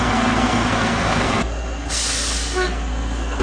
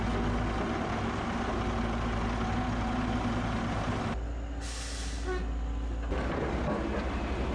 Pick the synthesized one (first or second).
first